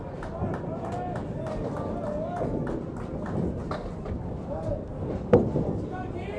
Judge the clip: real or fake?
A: real